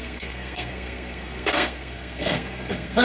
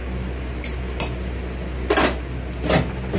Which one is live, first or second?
second